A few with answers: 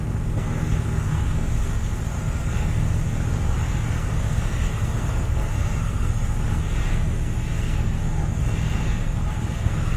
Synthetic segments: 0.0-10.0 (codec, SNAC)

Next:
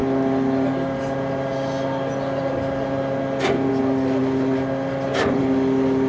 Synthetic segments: none

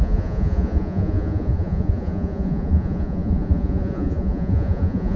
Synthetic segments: 0.0-5.2 (vocoder, Vocos)

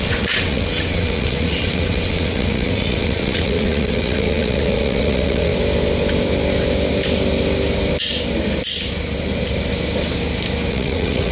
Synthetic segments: 0.0-5.5 (vocoder, WaveNeXt); 10.7-11.3

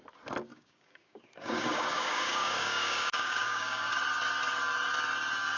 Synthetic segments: 0.5-3.9 (codec, DAC)